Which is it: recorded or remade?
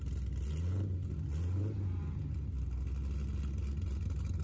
recorded